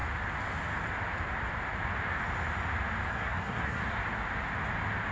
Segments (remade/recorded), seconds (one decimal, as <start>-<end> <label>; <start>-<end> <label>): 0.0-3.1 recorded; 3.1-3.8 remade; 3.8-5.1 recorded